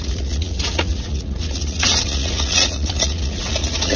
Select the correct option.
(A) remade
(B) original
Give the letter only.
A